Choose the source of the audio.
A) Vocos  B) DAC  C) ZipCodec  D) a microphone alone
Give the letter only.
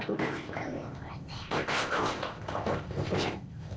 C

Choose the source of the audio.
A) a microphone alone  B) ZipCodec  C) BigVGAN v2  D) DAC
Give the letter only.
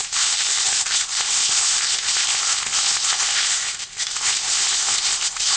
B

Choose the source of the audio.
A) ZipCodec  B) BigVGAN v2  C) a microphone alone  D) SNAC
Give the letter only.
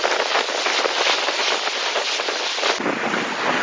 C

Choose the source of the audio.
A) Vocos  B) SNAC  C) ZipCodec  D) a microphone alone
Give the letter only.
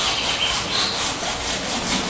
D